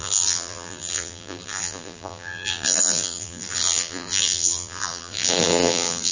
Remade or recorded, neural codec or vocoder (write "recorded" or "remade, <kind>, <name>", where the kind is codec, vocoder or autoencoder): remade, vocoder, BigVGAN v2